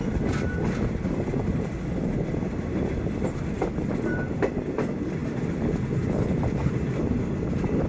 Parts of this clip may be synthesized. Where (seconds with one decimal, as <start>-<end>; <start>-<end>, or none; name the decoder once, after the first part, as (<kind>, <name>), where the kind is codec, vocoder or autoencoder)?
none